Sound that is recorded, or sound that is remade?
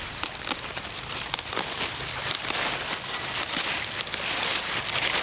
recorded